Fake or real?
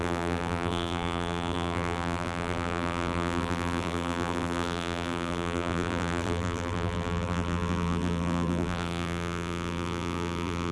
fake